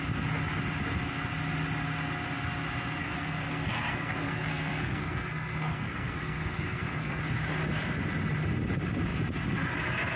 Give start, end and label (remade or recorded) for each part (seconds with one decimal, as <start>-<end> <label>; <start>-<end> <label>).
0.0-3.0 recorded; 3.0-7.2 remade; 7.2-10.2 recorded